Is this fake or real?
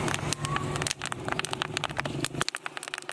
real